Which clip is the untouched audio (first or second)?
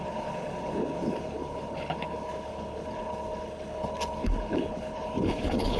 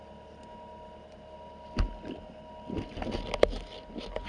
second